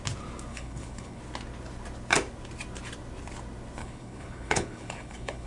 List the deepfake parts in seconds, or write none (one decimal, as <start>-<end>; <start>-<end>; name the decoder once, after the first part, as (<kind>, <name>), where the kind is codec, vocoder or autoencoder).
0.5-1.2 (codec, HILCodec); 3.8-5.5